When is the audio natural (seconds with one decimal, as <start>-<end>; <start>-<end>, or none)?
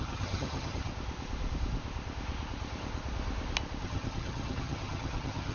0.9-3.8